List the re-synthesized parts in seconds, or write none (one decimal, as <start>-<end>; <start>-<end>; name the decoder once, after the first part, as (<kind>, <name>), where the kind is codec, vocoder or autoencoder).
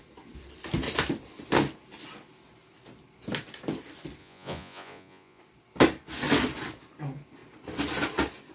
4.2-5.4 (vocoder, Vocos)